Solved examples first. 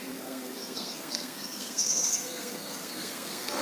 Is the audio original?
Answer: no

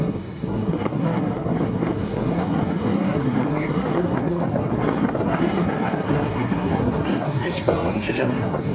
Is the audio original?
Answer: no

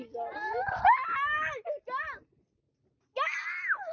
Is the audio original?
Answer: yes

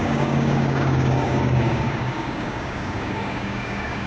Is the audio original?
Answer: no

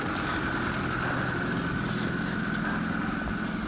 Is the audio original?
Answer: yes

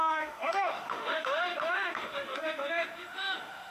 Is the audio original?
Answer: no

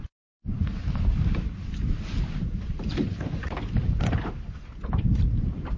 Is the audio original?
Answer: no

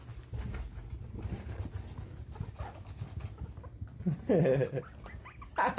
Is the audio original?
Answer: yes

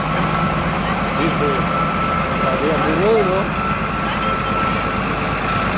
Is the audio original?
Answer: yes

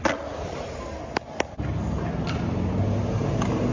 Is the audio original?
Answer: yes